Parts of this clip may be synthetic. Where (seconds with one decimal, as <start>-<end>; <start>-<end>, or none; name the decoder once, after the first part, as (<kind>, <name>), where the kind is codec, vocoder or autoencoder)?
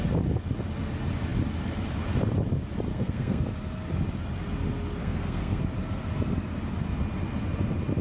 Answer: 2.9-3.4 (codec, SNAC); 5.0-5.6